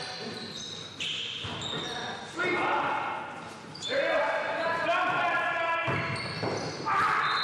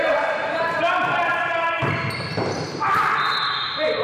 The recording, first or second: first